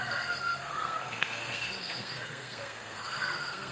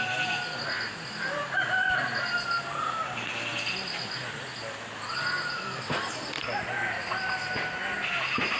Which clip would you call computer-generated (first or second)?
first